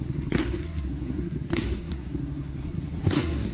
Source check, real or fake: fake